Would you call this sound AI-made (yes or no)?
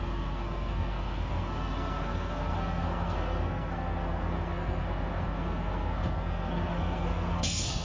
yes